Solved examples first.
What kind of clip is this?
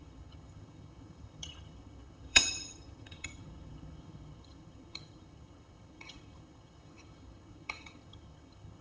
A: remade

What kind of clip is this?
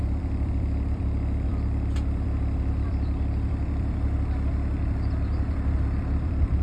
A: remade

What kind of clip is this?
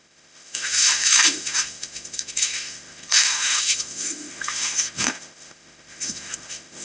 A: remade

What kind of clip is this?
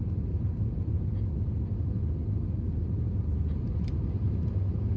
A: recorded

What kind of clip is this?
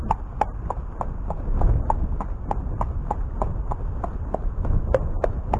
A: recorded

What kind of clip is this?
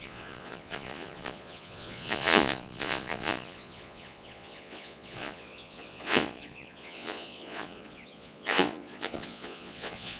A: remade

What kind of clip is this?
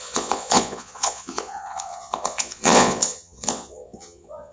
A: remade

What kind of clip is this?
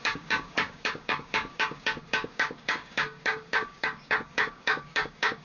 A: remade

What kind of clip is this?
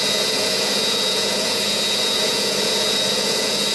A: remade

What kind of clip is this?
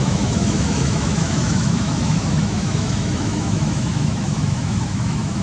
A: remade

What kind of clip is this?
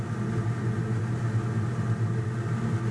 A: recorded